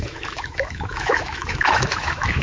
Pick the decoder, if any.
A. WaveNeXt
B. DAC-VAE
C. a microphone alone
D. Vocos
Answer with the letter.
B